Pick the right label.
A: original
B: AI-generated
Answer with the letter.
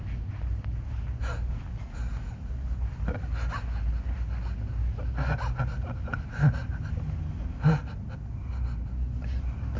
A